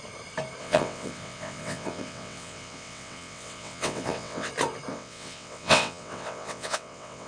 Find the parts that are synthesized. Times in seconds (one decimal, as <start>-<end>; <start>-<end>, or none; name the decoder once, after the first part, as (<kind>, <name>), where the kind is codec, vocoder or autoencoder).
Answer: 0.6-4.5 (vocoder, WaveNeXt); 4.9-7.3